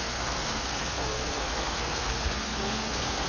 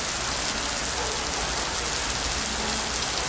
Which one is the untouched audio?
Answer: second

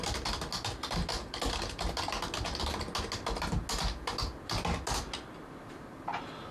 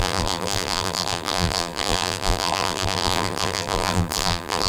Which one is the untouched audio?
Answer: first